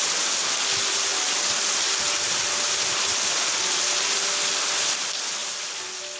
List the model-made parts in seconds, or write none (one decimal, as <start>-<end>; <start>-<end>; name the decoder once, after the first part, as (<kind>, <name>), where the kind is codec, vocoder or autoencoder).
none